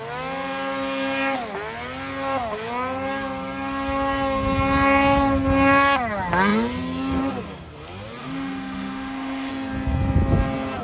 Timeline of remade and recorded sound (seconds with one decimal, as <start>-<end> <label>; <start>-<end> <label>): 0.0-8.2 recorded; 8.2-9.5 remade; 9.5-10.8 recorded